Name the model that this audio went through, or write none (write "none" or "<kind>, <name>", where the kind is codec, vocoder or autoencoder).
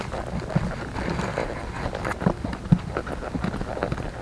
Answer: none